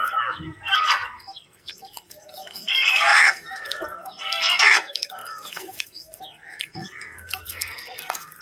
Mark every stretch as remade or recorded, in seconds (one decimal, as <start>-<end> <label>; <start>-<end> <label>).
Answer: 0.0-8.4 remade